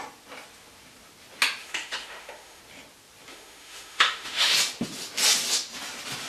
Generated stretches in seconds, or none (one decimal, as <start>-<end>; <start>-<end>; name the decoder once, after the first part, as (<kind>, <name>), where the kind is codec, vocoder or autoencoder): 1.6-2.6 (autoencoder, DAC-VAE); 3.3-4.5